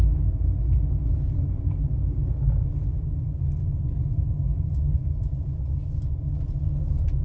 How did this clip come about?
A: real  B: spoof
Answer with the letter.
A